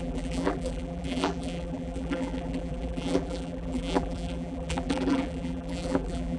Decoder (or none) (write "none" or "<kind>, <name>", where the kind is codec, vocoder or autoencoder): vocoder, BigVGAN v2